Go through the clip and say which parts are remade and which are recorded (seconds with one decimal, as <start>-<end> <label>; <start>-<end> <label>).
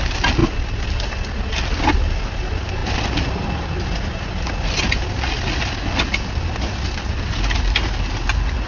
0.0-8.7 recorded